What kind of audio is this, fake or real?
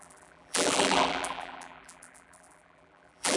fake